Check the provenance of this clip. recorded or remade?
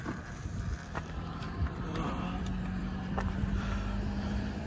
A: remade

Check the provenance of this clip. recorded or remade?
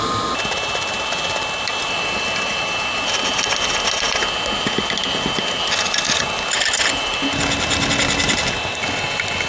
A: recorded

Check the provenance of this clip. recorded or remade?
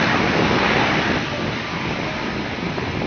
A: recorded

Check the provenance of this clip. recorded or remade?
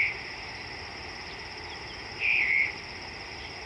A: remade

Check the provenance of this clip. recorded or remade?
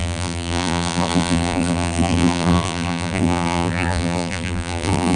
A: remade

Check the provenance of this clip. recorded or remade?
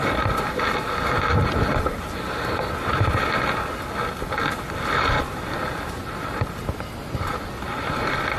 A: recorded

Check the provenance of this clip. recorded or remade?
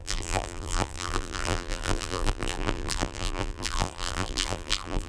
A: remade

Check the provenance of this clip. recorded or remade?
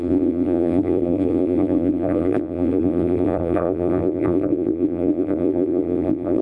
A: remade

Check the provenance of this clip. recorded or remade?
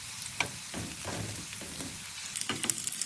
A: recorded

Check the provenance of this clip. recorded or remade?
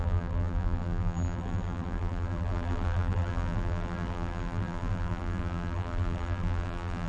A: remade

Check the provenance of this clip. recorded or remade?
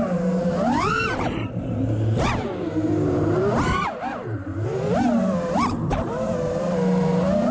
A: remade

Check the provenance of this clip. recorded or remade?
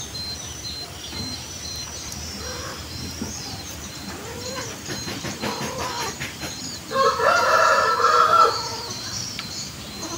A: remade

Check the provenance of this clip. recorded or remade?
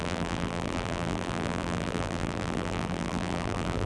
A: remade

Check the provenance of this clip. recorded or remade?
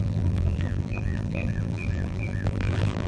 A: remade